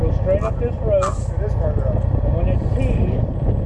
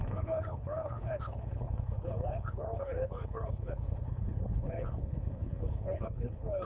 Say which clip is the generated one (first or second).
second